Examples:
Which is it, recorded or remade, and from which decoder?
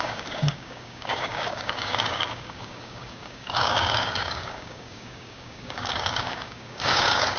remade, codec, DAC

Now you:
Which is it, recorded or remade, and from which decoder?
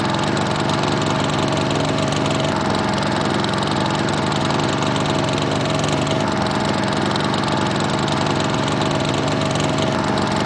recorded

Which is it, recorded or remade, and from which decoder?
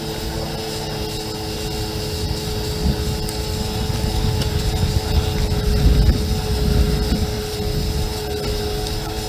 recorded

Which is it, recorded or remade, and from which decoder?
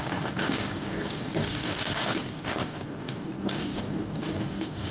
remade, codec, DAC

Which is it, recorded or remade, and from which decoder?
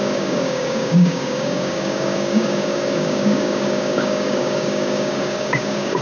remade, codec, DAC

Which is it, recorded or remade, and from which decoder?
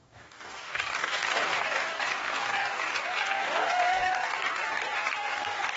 remade, codec, DAC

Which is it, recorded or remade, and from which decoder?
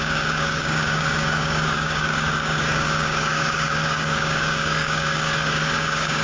remade, codec, DAC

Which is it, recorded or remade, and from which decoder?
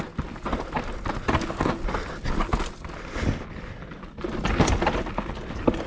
recorded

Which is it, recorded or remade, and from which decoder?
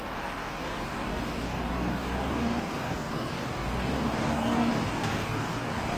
remade, codec, DAC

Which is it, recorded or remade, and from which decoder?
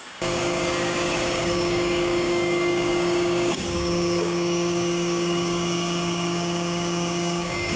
remade, codec, DAC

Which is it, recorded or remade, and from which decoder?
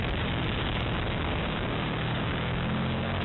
remade, codec, DAC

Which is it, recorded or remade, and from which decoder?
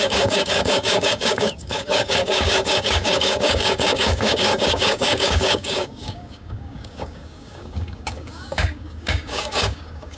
remade, codec, DAC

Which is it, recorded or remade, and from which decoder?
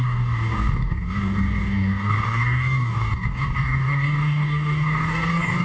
remade, codec, DAC